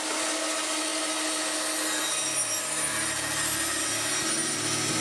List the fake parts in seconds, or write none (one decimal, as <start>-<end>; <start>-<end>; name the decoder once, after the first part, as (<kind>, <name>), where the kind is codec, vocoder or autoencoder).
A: none